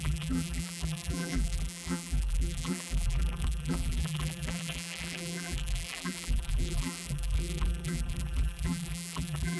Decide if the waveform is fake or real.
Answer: fake